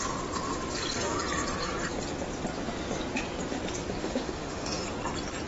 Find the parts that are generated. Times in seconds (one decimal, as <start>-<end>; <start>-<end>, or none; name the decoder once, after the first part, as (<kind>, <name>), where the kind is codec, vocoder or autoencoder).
4.0-4.8 (autoencoder, DAC-VAE)